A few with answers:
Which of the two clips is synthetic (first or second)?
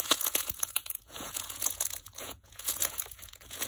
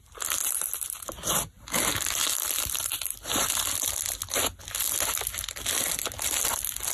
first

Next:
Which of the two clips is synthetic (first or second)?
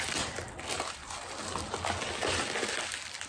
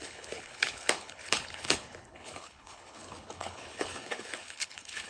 second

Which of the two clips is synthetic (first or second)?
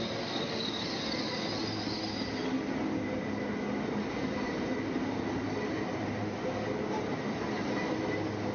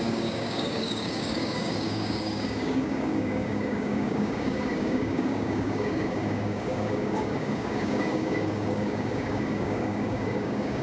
second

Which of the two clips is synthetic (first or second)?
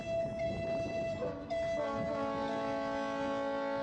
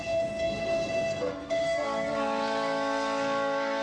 second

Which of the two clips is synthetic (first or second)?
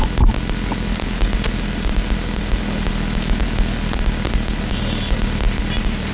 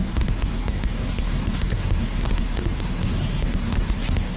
second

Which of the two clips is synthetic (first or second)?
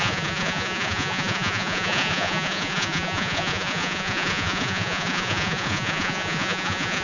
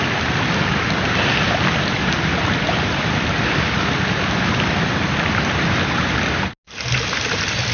first